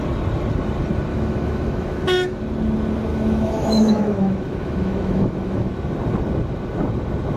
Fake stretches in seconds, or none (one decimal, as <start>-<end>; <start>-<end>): 1.1-2.4; 3.1-5.7